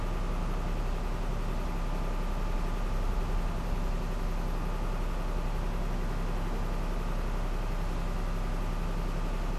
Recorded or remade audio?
recorded